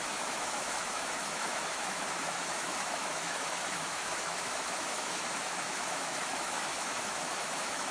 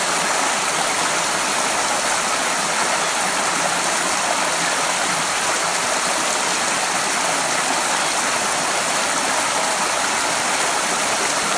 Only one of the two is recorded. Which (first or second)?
second